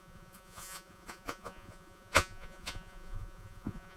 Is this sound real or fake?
fake